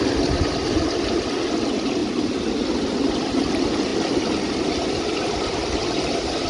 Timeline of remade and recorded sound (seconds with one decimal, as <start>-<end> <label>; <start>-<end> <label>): 0.0-6.5 recorded